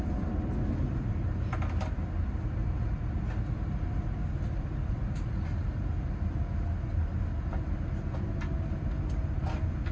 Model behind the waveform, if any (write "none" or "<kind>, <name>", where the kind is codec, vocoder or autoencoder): none